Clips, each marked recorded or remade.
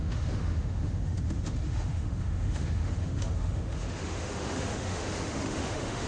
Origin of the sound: remade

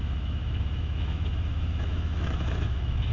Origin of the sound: remade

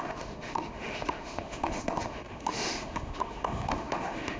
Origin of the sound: remade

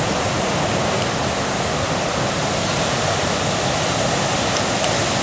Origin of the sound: recorded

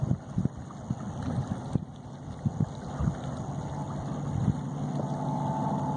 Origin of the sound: recorded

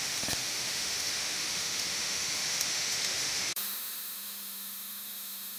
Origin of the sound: remade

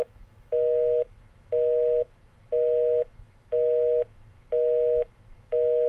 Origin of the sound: remade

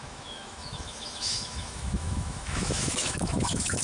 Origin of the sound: remade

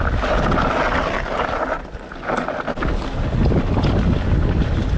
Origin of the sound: recorded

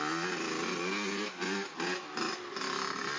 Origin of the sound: recorded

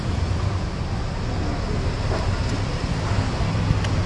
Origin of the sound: recorded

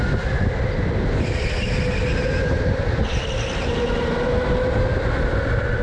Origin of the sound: recorded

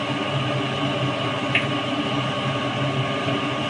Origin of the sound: recorded